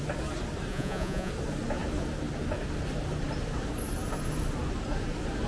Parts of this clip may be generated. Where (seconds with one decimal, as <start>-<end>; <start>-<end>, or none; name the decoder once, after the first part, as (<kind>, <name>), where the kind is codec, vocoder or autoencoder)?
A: 0.7-1.3 (vocoder, Vocos)